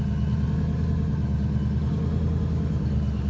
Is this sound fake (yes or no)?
no